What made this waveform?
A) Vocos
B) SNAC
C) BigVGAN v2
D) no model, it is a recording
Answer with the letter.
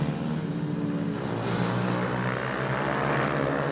D